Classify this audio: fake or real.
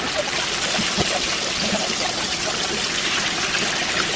real